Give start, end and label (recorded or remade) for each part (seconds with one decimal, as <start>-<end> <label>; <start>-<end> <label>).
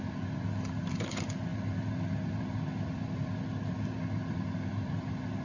0.0-5.4 recorded